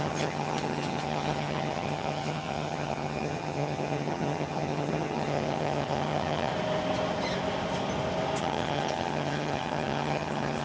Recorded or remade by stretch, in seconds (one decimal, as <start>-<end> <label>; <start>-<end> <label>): 0.0-6.5 remade; 6.5-8.4 recorded; 8.4-10.6 remade